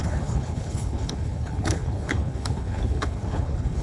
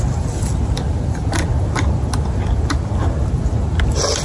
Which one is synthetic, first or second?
first